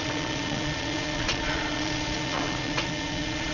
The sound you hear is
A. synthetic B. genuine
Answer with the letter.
A